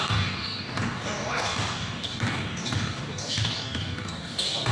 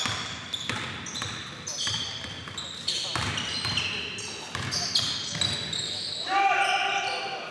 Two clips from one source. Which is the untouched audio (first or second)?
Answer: second